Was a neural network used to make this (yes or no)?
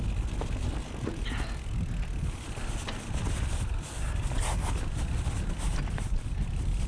no